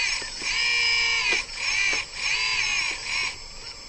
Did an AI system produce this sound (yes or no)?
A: no